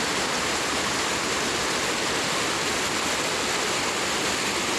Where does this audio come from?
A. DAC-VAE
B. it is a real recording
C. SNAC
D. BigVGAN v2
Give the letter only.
B